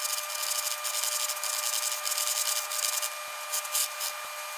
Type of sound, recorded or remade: recorded